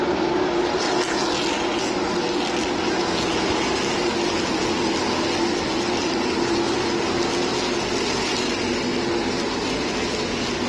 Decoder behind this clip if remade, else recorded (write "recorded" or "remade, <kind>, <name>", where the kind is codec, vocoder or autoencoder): recorded